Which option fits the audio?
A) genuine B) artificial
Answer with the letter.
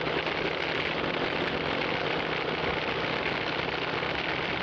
A